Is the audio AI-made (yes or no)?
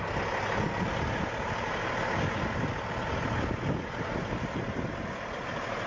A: no